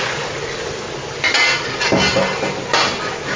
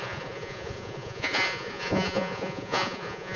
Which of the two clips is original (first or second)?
first